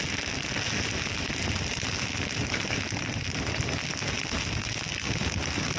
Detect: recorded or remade recorded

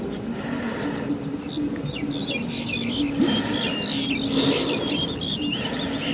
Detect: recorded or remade recorded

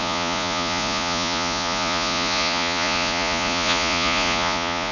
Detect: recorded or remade remade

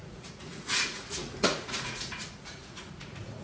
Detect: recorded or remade remade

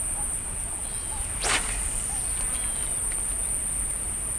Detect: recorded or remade recorded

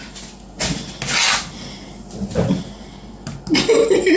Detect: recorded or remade recorded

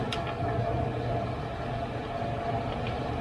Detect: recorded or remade recorded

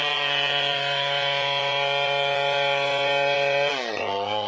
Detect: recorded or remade remade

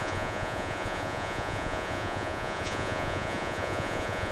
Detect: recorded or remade remade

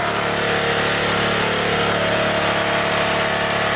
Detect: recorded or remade recorded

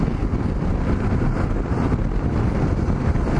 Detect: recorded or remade recorded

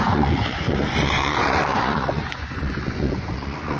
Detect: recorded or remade remade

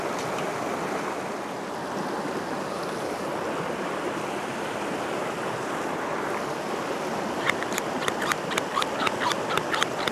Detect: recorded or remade recorded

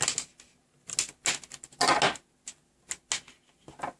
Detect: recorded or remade recorded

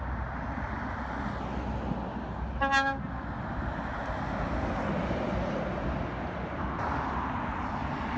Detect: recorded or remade recorded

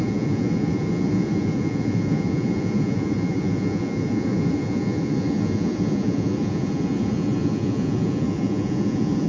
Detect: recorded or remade remade